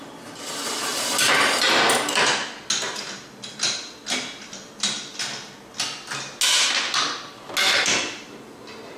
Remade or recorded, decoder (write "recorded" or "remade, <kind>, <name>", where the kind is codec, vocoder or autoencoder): recorded